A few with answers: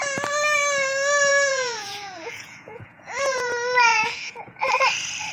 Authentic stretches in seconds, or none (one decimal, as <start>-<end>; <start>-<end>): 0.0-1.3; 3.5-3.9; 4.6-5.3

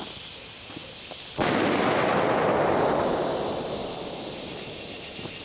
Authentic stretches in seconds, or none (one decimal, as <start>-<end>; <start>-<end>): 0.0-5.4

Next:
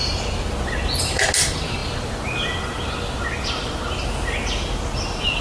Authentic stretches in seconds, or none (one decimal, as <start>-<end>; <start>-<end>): 0.0-5.4

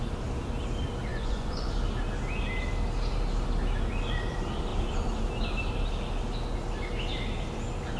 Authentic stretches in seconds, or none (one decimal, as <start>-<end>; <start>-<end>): 0.0-1.1; 1.7-8.0